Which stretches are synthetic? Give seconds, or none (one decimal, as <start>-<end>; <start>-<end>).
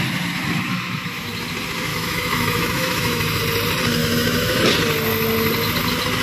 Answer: 0.7-1.3; 1.9-3.4; 4.0-4.6